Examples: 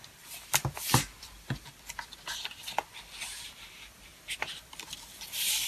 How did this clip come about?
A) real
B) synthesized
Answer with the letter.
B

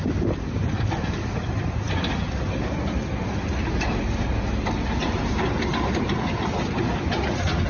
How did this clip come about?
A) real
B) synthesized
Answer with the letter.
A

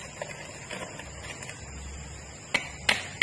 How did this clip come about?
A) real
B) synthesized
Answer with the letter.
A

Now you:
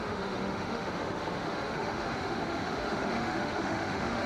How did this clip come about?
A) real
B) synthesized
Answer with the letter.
B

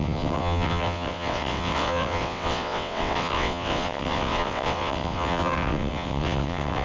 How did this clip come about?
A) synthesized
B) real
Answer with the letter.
A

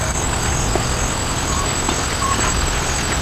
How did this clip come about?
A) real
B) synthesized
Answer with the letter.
A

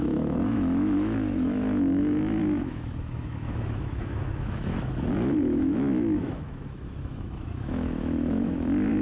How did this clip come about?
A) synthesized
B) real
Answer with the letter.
A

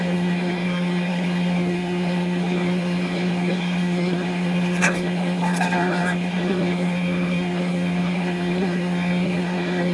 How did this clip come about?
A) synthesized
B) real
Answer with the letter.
A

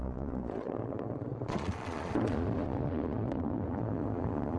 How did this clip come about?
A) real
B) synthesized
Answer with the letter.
B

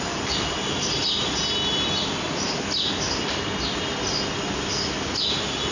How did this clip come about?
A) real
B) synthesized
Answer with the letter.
A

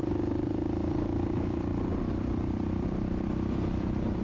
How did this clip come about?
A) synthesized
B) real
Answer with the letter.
A